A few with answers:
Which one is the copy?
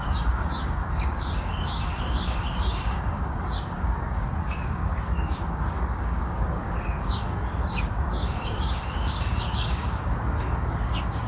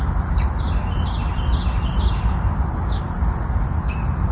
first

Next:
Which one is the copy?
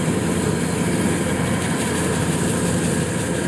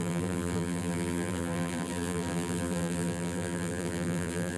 second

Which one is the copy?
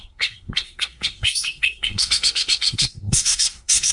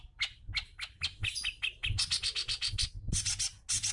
first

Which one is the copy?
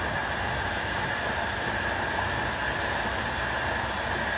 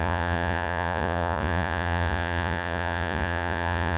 second